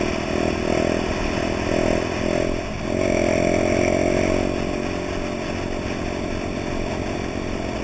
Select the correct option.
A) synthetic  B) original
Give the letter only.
B